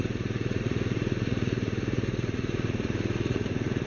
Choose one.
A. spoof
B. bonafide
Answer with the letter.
A